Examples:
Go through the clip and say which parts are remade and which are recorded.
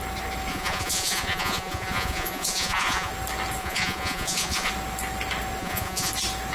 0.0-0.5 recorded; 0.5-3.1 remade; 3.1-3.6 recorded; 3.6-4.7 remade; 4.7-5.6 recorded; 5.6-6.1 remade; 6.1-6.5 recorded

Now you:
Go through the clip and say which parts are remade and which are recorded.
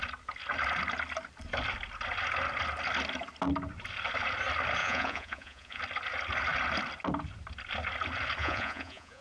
0.0-4.8 recorded; 4.8-5.8 remade; 5.8-8.4 recorded; 8.4-9.2 remade